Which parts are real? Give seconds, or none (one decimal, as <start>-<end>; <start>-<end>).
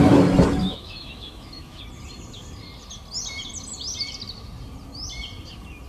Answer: 0.0-0.6; 1.8-5.9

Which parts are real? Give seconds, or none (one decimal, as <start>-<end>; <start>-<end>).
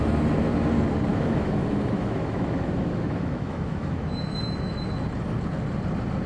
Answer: 0.0-1.1; 4.9-6.3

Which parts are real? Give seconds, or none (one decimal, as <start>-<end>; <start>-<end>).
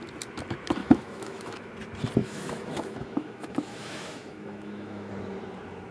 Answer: 0.0-0.8; 1.7-2.2; 5.1-5.9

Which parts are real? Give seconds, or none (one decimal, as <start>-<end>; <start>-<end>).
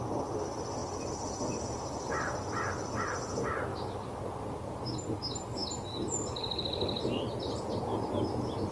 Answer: 0.0-3.7; 4.2-8.7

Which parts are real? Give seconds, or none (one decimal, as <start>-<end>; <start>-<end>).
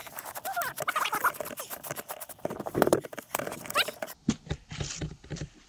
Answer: 0.0-5.7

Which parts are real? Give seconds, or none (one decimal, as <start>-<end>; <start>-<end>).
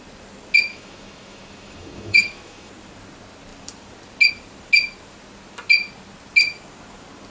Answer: 0.0-0.7; 2.7-7.3